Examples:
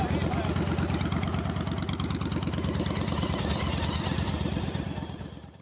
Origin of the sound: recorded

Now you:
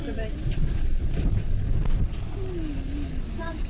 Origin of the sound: recorded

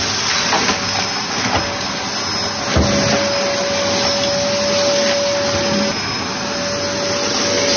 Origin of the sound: recorded